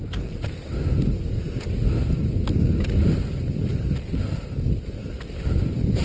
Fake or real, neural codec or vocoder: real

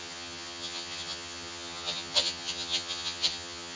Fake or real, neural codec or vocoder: fake, vocoder, HiFi-GAN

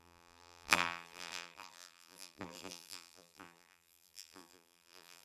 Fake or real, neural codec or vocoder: fake, vocoder, BigVGAN v2